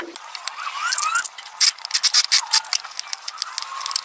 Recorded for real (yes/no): yes